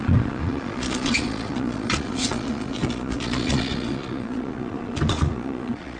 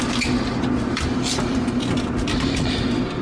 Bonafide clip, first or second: second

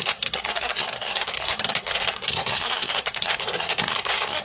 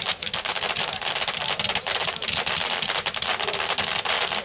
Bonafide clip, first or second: second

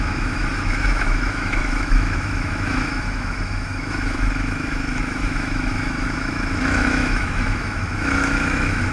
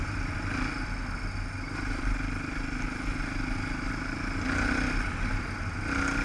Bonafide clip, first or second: second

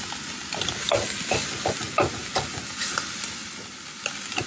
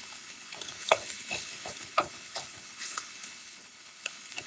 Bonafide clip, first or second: first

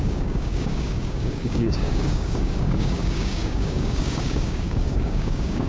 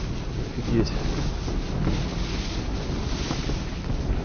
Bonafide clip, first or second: second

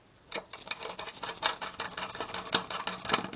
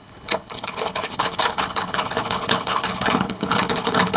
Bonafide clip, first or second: first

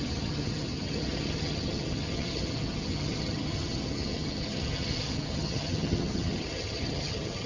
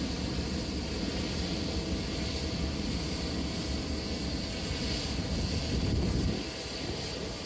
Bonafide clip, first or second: second